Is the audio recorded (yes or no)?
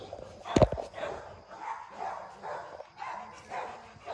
yes